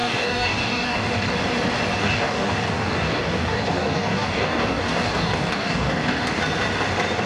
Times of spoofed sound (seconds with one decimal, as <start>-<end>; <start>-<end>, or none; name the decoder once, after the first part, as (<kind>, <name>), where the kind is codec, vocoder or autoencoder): 0.0-1.3 (codec, DAC); 2.0-6.4